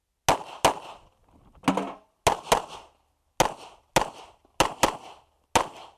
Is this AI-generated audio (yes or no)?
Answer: no